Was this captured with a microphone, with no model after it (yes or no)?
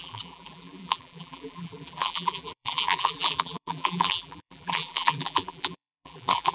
no